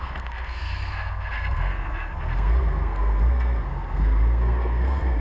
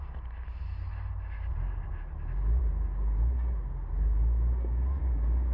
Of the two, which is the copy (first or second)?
first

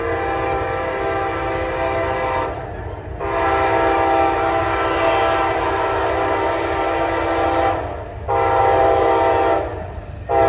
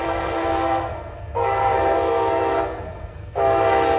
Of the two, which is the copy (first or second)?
second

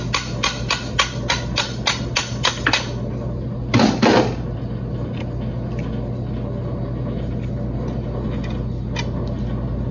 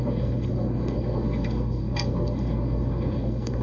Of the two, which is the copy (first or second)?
second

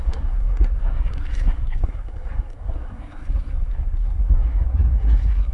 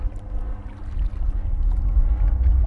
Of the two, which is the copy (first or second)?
first